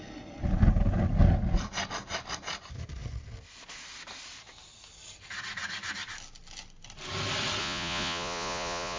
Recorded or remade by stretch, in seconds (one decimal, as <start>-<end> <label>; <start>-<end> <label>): 0.0-7.6 recorded; 7.6-9.0 remade